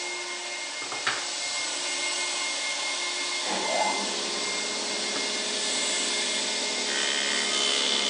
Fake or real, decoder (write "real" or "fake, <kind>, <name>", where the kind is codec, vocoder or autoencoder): real